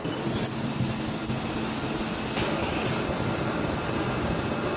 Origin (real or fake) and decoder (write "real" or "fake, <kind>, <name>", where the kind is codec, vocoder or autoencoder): real